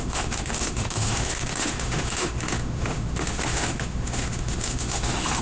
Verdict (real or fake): fake